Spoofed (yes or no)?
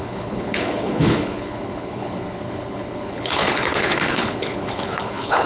yes